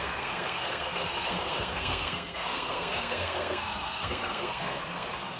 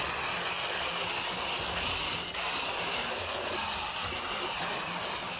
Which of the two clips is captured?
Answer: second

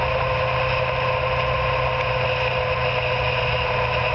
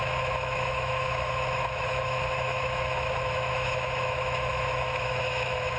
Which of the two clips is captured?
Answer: first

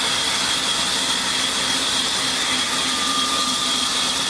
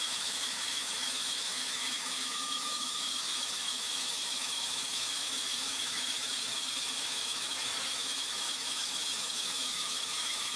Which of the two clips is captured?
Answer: first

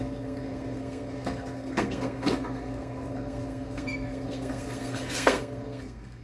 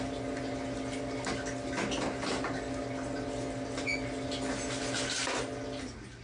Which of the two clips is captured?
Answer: second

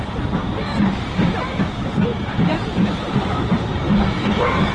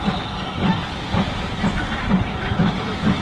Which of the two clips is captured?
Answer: second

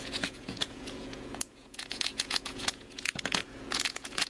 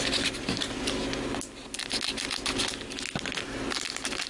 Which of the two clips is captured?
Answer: second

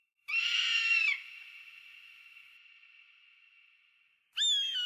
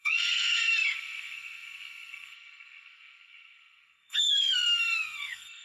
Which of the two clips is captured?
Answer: first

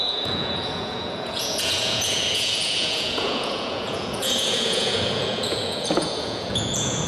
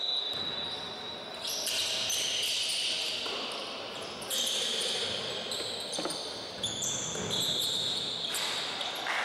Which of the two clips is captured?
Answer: second